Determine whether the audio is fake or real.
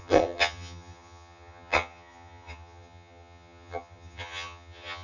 fake